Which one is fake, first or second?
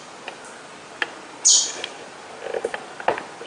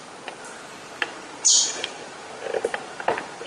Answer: second